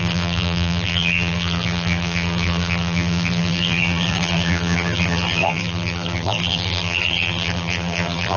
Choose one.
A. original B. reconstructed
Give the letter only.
B